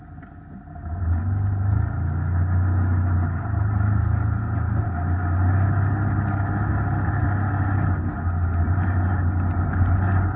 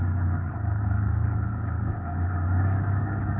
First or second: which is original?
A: first